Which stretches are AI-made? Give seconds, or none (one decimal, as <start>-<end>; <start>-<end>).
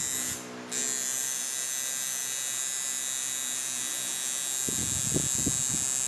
none